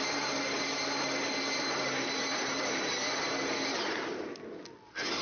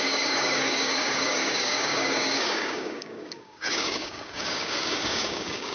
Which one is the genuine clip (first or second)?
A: first